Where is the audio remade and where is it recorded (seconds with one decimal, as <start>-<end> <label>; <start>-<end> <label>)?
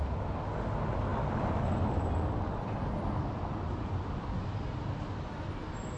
0.0-6.0 recorded